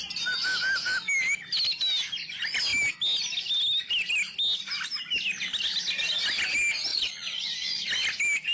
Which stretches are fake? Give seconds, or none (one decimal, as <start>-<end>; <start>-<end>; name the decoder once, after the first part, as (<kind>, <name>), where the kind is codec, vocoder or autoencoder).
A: 6.9-7.9 (vocoder, Vocos)